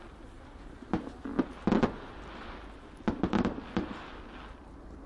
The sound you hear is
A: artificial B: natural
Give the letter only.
B